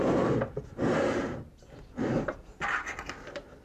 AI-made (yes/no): no